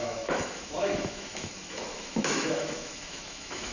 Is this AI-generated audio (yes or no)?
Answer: yes